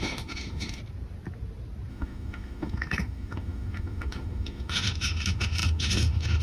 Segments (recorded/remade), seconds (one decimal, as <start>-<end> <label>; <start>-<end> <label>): 0.0-0.8 remade; 0.8-1.9 recorded; 1.9-6.4 remade